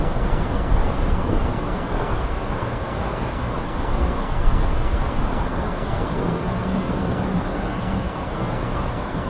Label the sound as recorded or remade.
remade